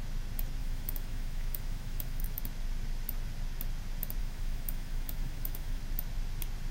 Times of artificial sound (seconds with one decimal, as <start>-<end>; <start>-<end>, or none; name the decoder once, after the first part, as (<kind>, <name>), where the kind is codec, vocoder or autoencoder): 0.6-2.4 (autoencoder, DAC-VAE); 4.2-5.8